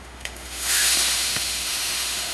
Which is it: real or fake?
fake